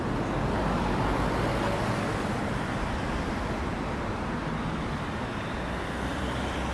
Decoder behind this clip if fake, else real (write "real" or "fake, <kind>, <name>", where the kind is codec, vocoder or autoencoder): real